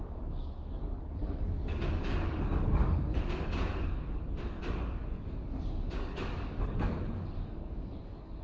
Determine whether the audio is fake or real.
fake